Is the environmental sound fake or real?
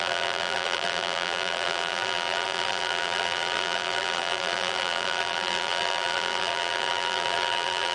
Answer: fake